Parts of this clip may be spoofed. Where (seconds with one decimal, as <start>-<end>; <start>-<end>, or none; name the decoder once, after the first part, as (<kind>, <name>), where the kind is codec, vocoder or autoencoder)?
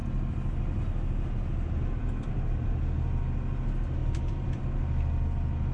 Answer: 4.0-4.6 (vocoder, BigVGAN v2)